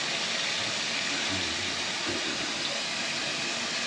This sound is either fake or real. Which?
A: real